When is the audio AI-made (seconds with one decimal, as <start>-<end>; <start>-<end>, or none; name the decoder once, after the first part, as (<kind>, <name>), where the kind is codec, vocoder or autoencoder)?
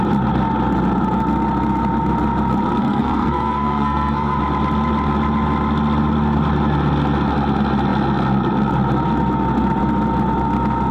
2.8-4.4 (codec, SNAC)